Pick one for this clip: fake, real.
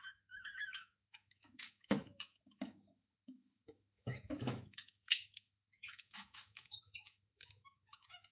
fake